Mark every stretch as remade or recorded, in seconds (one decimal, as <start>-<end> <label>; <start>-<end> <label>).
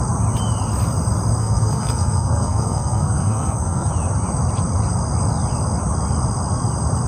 0.0-1.4 recorded; 1.4-3.9 remade; 3.9-7.1 recorded